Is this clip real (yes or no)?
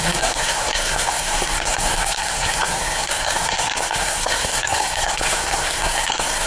no